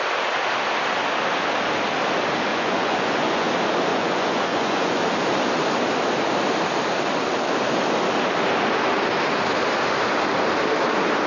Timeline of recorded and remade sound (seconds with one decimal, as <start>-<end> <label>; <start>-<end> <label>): 0.0-2.5 recorded; 2.5-3.5 remade; 3.5-3.9 recorded; 3.9-5.0 remade; 5.0-11.3 recorded